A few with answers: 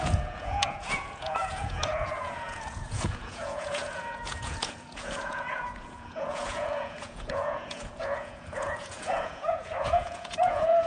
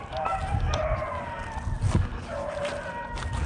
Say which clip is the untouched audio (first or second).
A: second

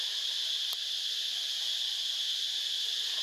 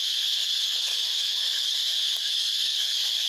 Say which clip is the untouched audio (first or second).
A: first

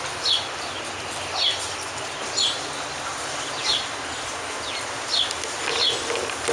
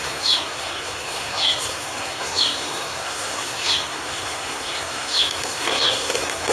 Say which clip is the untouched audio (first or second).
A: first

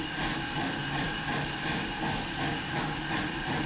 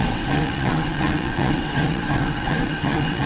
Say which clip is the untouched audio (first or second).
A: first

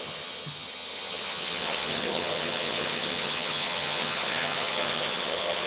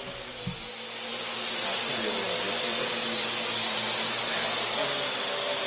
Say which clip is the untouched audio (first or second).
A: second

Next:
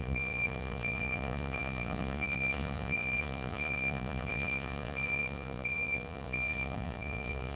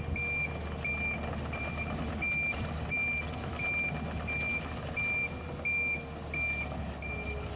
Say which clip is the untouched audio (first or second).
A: second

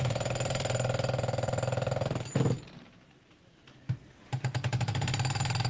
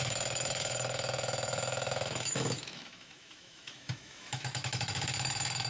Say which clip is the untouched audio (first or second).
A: first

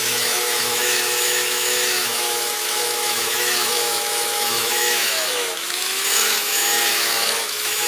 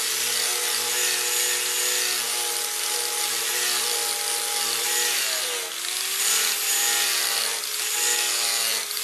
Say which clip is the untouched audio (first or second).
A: second